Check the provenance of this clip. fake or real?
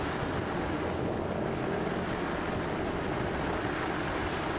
real